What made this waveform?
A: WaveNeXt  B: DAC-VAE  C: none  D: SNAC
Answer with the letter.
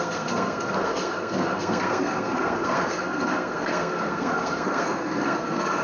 D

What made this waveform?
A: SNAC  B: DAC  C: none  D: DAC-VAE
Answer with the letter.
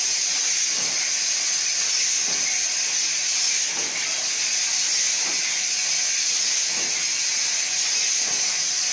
C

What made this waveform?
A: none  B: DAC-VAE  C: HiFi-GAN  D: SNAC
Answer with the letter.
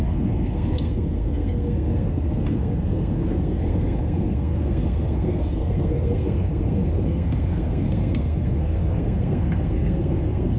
D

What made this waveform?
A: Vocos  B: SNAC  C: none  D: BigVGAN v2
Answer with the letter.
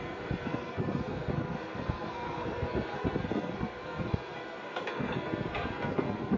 B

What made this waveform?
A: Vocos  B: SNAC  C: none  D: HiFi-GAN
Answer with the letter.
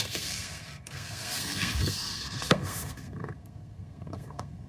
B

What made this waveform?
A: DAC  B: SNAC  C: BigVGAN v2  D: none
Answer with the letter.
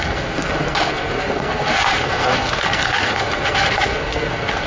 B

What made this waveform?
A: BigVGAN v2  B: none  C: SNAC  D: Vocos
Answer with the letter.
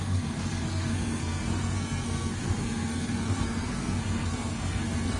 C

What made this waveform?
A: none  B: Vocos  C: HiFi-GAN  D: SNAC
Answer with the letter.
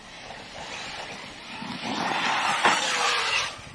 A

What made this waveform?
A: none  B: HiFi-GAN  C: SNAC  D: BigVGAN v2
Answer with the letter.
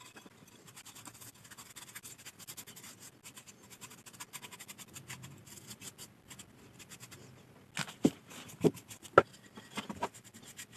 A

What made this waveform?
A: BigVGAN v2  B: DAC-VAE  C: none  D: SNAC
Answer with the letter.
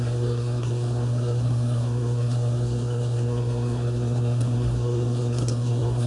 D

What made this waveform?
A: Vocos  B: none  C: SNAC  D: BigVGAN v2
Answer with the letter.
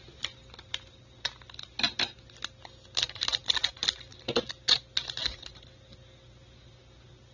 B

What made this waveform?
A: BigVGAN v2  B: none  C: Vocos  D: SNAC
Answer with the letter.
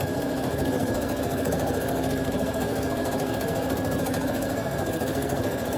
D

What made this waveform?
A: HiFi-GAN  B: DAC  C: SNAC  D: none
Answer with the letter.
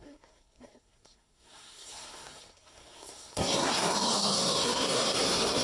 C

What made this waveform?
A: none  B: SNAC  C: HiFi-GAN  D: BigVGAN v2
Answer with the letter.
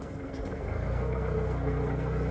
B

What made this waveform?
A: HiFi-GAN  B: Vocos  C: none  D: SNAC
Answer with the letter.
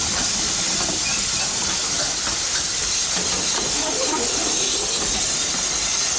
C